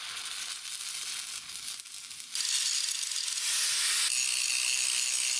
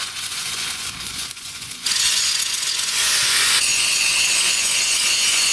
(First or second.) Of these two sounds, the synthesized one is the second